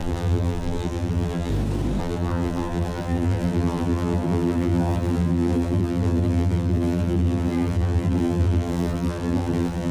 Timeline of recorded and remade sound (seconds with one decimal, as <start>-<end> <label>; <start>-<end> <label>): 0.0-1.5 remade; 1.5-2.0 recorded; 2.0-9.9 remade